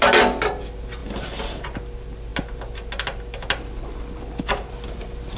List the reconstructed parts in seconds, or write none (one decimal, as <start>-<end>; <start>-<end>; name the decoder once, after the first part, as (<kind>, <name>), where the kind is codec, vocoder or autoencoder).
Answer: none